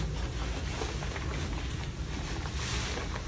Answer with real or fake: real